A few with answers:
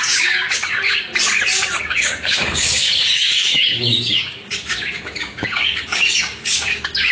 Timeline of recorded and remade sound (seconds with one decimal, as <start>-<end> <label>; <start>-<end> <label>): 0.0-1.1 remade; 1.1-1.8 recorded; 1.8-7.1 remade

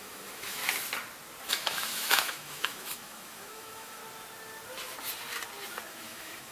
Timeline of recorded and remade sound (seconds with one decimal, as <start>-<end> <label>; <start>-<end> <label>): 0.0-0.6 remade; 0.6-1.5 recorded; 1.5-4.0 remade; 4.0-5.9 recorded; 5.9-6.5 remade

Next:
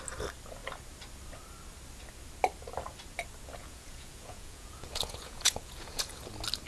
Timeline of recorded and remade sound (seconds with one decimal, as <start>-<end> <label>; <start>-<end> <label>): 0.0-3.6 recorded; 3.6-6.2 remade; 6.2-6.7 recorded